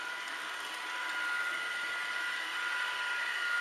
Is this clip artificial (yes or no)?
no